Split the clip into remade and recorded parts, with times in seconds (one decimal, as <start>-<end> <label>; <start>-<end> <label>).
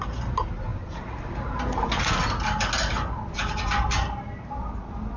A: 0.0-5.2 recorded